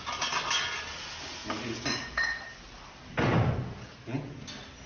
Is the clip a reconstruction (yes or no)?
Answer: no